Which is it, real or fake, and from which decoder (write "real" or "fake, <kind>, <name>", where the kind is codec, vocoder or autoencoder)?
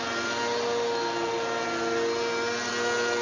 real